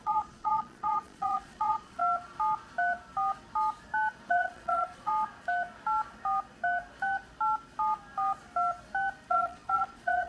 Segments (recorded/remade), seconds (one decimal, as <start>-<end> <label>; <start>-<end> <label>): 0.0-2.0 remade; 2.0-4.3 recorded; 4.3-5.1 remade; 5.1-9.3 recorded; 9.3-10.3 remade